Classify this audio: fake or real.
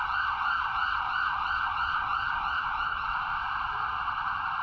fake